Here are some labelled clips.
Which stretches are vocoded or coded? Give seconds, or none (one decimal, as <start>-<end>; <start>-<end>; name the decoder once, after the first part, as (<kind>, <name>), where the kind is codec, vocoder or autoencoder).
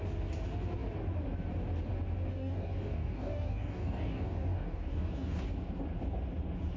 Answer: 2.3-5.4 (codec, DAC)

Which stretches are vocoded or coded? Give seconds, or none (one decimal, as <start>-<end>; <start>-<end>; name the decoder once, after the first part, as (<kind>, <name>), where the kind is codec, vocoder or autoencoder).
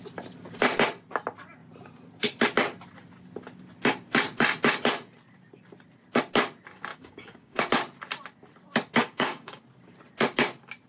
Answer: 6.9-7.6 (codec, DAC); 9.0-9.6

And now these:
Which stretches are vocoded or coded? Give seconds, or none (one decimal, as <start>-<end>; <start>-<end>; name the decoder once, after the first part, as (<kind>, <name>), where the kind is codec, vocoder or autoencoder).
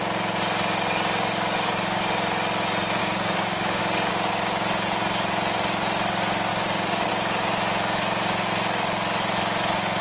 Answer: 3.0-3.8 (codec, DAC); 6.5-7.1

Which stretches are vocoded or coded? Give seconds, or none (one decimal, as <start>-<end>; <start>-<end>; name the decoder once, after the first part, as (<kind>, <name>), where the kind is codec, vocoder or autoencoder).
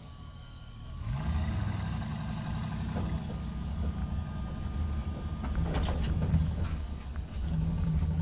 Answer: 0.0-2.1 (codec, DAC); 3.2-4.0; 6.3-8.2